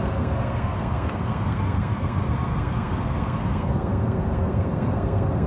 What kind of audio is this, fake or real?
fake